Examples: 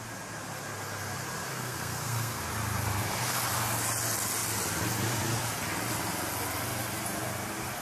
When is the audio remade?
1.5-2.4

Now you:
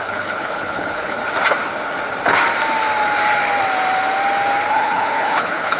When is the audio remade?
0.0-1.2; 4.7-5.8